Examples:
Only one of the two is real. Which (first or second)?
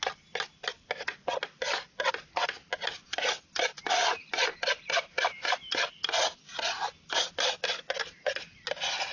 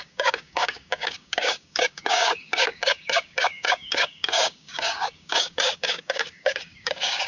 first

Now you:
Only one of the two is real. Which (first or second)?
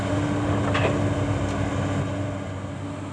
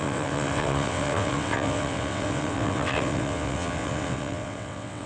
first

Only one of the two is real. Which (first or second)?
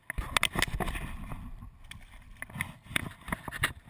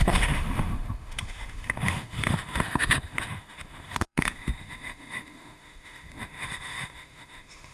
first